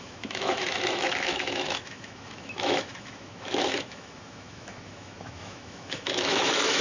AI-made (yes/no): yes